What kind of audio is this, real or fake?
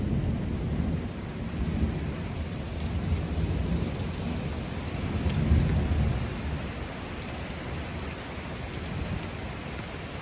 real